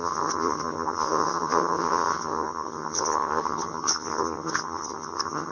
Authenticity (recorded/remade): remade